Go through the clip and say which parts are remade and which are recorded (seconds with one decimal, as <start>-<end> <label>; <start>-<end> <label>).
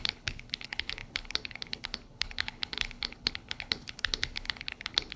0.0-5.2 remade